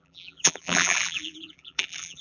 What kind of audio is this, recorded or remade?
remade